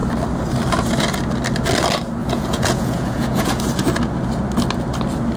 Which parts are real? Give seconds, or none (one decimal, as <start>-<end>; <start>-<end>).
0.0-2.2; 3.5-5.4